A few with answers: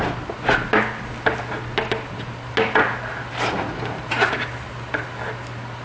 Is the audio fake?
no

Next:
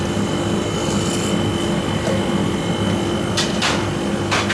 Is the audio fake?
no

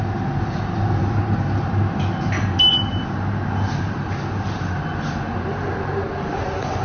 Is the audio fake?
no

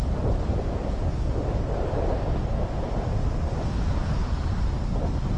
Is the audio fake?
no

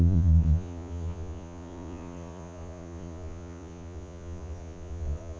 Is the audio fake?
yes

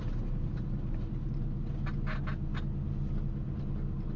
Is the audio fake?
no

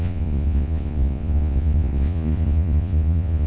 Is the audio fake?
yes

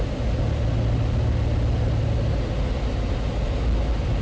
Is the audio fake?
no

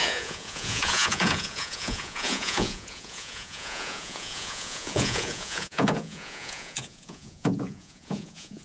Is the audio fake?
yes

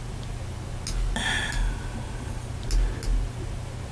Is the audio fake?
no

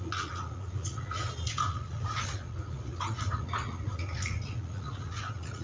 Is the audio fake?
yes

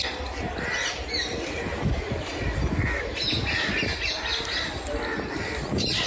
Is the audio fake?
no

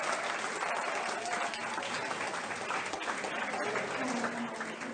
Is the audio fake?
no